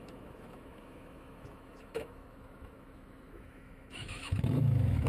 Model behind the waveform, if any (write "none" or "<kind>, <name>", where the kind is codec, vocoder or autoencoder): autoencoder, DAC-VAE